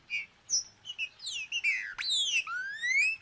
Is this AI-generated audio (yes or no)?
no